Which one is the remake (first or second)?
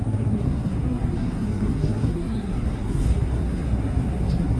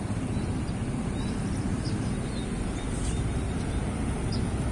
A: first